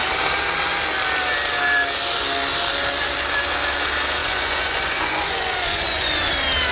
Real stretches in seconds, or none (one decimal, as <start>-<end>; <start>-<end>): 0.0-4.2; 6.3-6.7